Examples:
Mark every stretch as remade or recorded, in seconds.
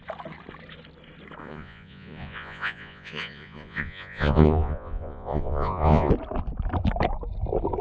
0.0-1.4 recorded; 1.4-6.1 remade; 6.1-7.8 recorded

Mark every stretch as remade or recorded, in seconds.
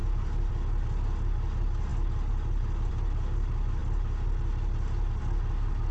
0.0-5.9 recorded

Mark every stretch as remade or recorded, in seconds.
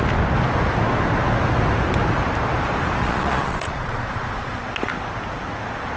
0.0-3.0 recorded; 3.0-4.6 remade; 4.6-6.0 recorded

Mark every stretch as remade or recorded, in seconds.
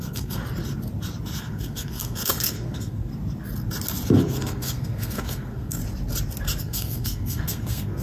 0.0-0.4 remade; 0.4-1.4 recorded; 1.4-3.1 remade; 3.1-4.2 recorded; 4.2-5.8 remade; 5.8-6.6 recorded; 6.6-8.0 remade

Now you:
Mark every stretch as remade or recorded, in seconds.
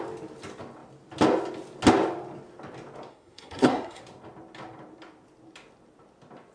0.0-3.1 recorded; 3.1-4.0 remade; 4.0-6.5 recorded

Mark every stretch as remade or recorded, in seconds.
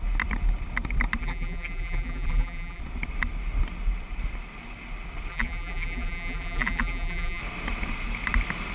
0.0-1.2 recorded; 1.2-2.8 remade; 2.8-5.3 recorded; 5.3-7.4 remade; 7.4-8.7 recorded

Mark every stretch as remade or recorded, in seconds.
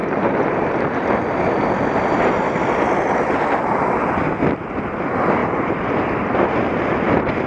0.0-5.4 recorded; 5.4-6.5 remade; 6.5-7.5 recorded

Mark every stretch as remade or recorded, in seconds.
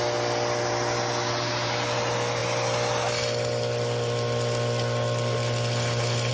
0.0-6.3 recorded